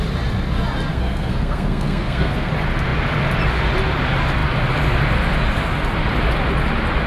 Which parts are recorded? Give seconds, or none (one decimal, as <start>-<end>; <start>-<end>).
0.0-0.9; 2.5-7.1